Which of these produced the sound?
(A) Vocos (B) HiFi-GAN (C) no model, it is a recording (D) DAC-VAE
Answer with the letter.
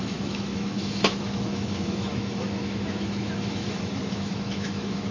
D